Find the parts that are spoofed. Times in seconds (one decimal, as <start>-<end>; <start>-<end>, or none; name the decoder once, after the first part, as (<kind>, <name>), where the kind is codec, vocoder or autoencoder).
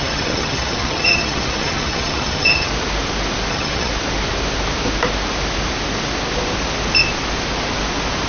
0.0-2.7 (vocoder, HiFi-GAN); 3.5-3.9